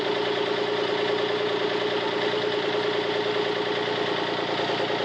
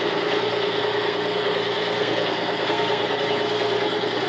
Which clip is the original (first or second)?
first